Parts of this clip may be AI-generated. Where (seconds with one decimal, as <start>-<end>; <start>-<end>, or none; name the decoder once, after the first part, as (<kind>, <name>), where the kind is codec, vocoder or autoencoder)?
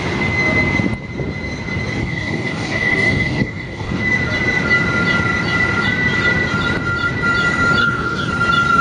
2.0-4.0 (codec, DAC); 7.8-8.3